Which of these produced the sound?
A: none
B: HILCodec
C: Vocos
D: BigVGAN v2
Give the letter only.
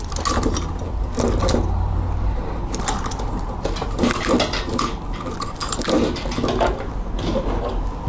A